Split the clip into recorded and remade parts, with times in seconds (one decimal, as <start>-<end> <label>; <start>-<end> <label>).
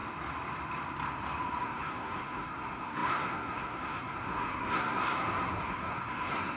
0.0-1.6 recorded; 1.6-6.6 remade